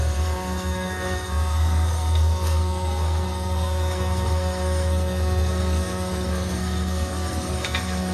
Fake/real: fake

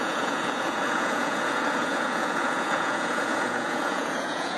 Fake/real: fake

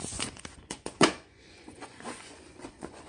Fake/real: fake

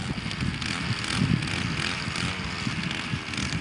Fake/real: real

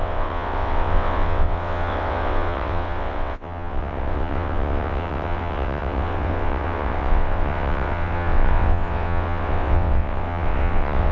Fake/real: fake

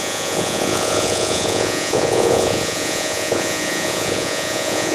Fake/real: fake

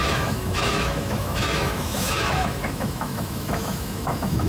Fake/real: fake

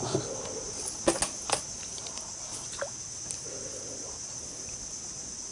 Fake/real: real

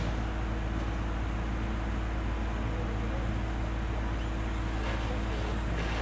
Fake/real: real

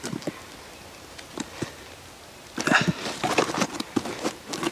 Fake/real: real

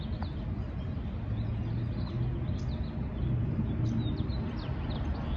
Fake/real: real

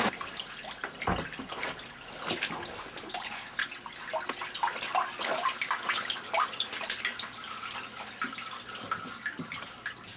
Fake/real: real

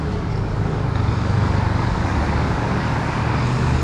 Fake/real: fake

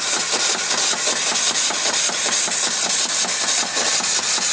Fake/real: real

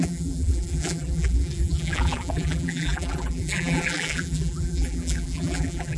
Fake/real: fake